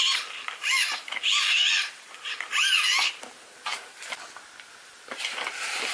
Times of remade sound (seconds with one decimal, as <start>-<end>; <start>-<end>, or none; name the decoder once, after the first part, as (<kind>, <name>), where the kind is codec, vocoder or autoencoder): none